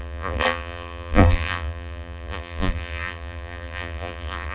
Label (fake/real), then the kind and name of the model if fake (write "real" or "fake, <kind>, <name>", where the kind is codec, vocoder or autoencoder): fake, vocoder, BigVGAN v2